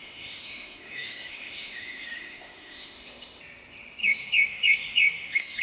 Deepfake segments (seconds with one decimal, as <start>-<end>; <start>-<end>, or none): 0.0-3.4; 4.0-5.6